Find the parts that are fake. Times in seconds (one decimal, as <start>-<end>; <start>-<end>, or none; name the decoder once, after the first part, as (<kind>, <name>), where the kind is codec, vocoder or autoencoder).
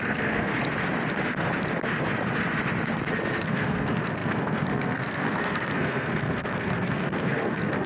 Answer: 0.0-0.5 (codec, SNAC); 3.4-7.9